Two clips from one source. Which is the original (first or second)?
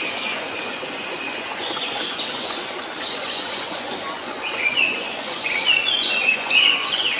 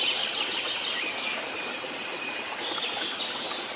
second